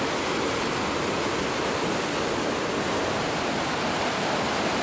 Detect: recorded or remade recorded